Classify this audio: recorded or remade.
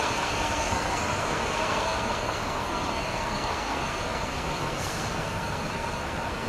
remade